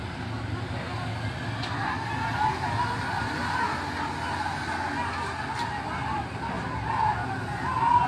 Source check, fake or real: real